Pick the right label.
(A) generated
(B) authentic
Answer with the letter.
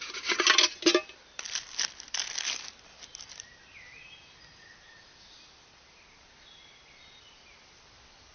B